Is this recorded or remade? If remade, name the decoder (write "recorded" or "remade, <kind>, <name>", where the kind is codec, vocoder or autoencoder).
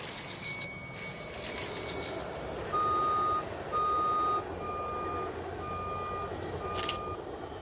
recorded